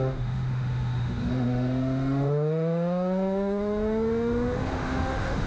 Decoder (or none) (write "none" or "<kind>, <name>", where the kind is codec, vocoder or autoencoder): autoencoder, DAC-VAE